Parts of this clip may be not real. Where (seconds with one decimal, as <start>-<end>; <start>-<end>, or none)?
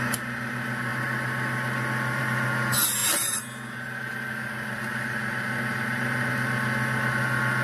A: none